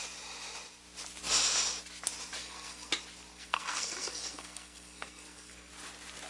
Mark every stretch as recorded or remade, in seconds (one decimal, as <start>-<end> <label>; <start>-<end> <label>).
0.0-2.4 recorded; 2.4-2.9 remade; 2.9-3.3 recorded; 3.3-5.7 remade; 5.7-6.3 recorded